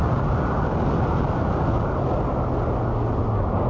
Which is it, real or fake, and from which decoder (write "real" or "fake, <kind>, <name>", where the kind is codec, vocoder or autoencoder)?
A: real